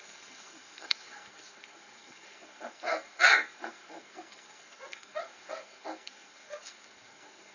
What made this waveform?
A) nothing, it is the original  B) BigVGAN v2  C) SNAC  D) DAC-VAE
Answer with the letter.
C